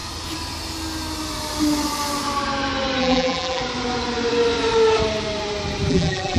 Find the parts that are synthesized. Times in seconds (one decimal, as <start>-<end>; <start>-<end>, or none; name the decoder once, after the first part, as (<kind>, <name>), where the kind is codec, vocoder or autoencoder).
3.0-3.6 (vocoder, BigVGAN v2); 5.9-6.4